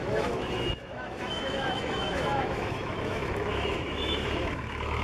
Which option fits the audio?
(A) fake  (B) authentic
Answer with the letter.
A